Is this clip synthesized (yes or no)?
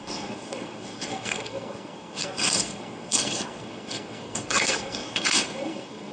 yes